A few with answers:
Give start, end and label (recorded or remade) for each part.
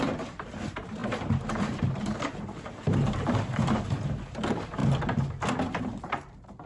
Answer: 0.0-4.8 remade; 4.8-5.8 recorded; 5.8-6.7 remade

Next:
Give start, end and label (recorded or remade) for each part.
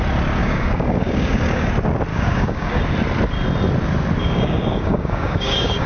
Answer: 0.0-0.4 recorded; 0.4-1.7 remade; 1.7-2.1 recorded; 2.1-2.9 remade; 2.9-4.2 recorded; 4.2-5.9 remade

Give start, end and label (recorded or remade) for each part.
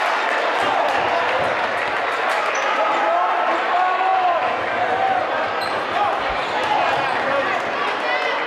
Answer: 0.0-8.5 recorded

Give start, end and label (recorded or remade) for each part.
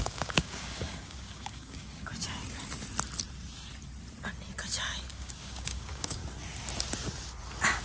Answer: 0.0-2.1 remade; 2.1-5.1 recorded; 5.1-6.2 remade; 6.2-7.8 recorded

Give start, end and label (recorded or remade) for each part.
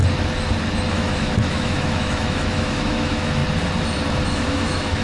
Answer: 0.0-0.9 recorded; 0.9-3.4 remade; 3.4-4.3 recorded; 4.3-5.0 remade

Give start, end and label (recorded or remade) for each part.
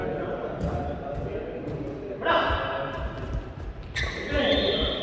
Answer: 0.0-5.0 recorded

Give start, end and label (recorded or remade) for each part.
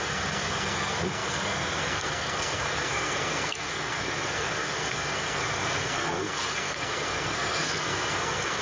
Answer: 0.0-8.6 remade